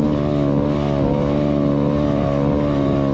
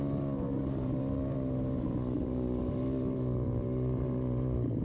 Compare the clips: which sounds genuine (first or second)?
first